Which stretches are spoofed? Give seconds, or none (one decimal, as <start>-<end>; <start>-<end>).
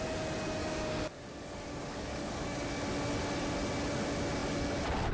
0.6-2.8